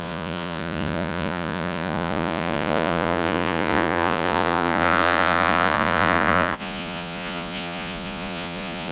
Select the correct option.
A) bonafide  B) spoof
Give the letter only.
B